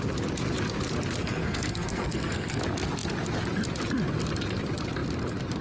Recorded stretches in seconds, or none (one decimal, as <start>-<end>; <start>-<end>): 0.0-1.2; 2.6-5.6